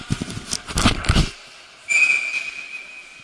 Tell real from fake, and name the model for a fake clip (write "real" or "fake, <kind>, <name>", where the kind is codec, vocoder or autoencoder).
real